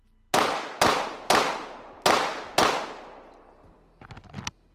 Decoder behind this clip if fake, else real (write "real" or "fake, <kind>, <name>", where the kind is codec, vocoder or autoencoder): real